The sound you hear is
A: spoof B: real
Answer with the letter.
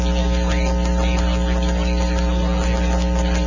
B